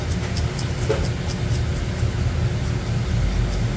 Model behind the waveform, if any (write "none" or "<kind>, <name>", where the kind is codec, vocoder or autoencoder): none